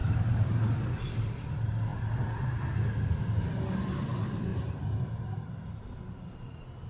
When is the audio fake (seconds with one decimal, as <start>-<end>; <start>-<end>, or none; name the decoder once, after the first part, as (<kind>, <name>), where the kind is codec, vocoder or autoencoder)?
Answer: 0.0-0.7 (vocoder, BigVGAN v2); 4.5-5.5